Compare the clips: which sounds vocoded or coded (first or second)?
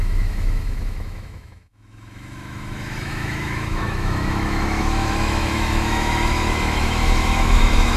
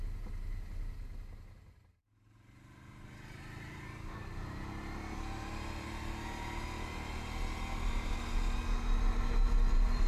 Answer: first